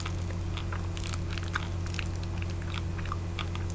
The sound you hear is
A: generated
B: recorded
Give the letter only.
B